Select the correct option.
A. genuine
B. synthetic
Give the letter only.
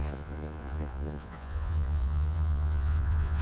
B